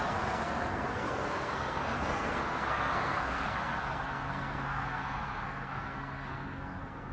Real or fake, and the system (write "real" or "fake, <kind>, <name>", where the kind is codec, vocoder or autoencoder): fake, codec, SNAC